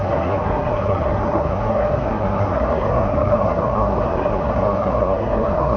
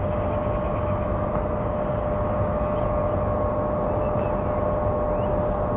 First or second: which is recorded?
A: second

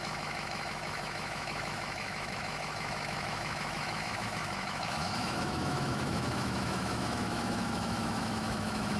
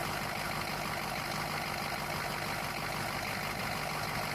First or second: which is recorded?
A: second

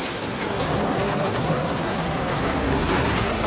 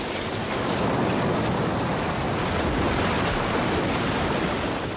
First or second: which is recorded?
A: second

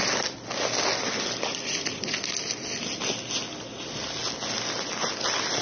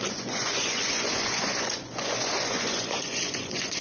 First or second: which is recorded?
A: first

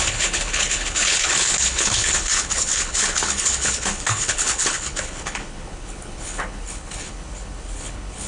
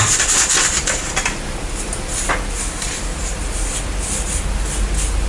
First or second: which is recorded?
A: second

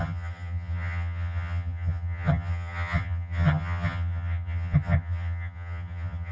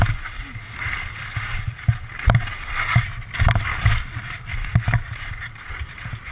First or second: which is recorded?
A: second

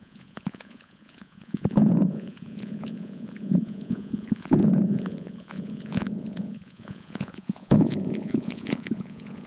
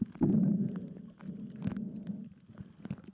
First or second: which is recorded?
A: second